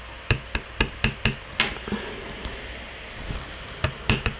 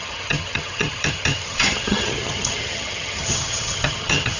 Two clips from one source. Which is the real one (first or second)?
first